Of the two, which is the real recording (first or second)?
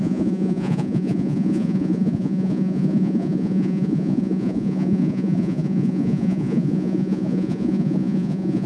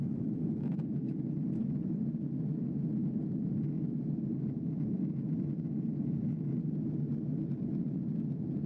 second